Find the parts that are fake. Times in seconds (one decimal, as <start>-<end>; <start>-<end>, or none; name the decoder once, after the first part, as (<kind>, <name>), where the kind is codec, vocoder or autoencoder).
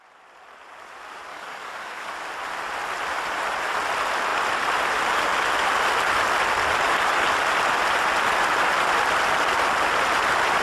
1.3-2.1 (codec, DAC)